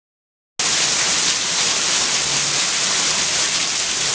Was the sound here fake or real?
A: real